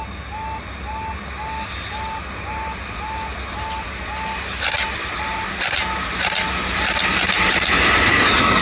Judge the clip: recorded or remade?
recorded